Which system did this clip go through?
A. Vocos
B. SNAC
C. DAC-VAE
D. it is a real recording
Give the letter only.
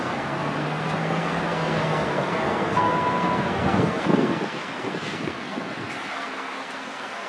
B